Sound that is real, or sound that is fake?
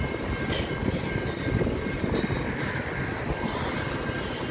real